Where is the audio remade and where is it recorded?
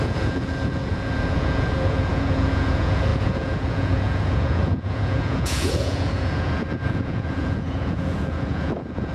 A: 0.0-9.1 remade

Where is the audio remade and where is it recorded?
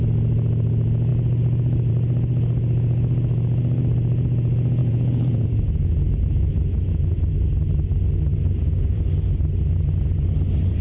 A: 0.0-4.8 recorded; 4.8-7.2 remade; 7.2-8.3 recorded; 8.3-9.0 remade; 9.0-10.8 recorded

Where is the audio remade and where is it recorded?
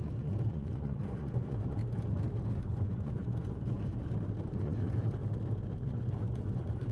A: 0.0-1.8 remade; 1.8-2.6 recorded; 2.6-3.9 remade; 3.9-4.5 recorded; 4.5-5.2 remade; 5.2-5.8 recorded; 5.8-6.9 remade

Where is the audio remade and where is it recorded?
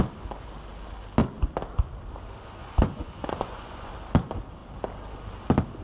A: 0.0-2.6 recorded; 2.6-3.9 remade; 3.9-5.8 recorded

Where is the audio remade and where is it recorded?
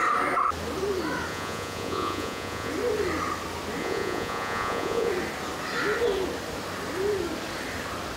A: 0.0-1.3 recorded; 1.3-2.7 remade; 2.7-3.8 recorded; 3.8-5.1 remade; 5.1-8.2 recorded